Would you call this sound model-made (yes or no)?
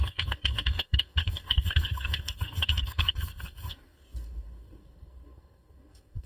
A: yes